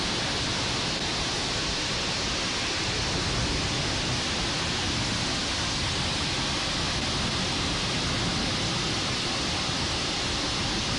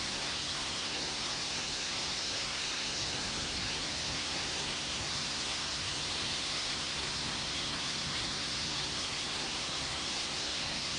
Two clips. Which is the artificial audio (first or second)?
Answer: second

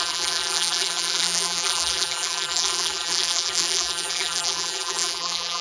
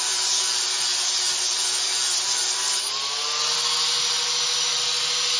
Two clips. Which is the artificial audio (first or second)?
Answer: first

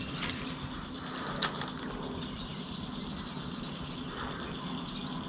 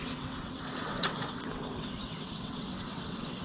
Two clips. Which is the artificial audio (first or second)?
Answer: second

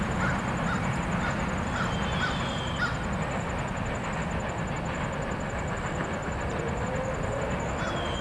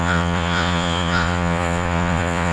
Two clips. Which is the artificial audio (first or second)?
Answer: second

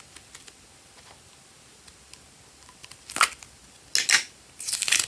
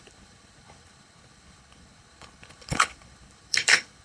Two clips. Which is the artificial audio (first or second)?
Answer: second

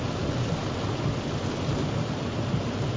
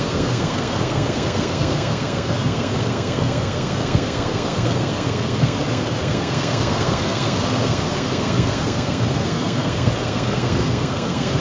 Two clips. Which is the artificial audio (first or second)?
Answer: second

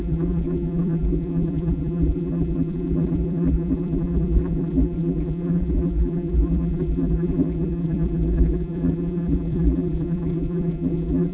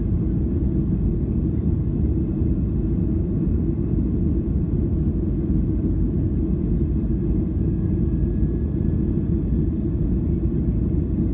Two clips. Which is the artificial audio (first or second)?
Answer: first